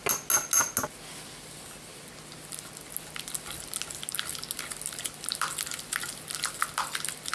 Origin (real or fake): real